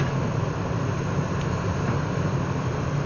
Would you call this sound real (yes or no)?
no